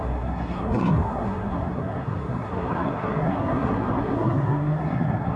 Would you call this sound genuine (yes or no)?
no